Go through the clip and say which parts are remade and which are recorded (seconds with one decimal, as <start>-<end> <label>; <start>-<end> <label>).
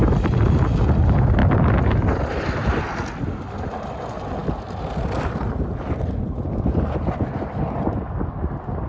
0.0-8.9 recorded